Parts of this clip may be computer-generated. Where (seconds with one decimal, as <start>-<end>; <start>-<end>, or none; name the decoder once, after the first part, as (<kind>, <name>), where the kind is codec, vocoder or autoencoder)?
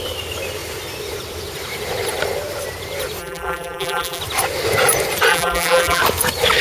3.2-4.2 (vocoder, BigVGAN v2); 5.3-6.0